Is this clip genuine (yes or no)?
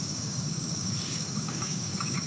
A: no